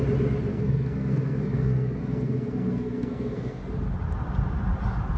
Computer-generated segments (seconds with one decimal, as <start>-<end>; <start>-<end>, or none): 0.5-3.6